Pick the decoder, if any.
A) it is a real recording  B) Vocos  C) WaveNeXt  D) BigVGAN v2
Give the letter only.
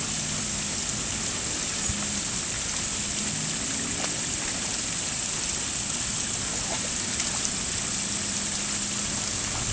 A